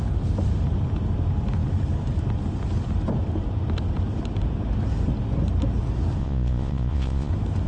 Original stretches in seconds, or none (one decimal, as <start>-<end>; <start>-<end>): 0.0-6.2; 7.3-7.7